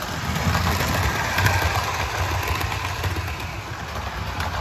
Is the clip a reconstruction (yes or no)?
no